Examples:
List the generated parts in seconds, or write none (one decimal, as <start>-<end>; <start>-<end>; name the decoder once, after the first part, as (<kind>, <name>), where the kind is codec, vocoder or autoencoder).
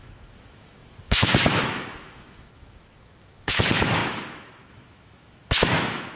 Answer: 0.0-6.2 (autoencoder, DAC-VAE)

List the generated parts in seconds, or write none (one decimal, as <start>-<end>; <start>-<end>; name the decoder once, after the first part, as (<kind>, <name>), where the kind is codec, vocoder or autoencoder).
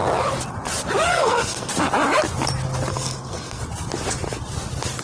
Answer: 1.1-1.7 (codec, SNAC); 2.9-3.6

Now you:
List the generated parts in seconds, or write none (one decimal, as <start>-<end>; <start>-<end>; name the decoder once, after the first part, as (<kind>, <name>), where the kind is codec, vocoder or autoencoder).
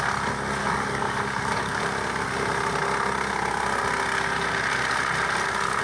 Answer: 0.6-1.8 (codec, DAC)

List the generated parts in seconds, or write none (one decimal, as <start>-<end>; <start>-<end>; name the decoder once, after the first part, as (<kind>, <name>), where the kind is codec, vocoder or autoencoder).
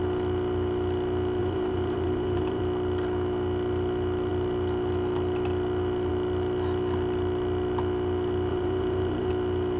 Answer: 1.4-2.6 (vocoder, BigVGAN v2); 8.5-9.3